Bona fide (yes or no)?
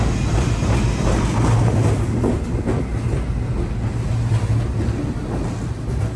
yes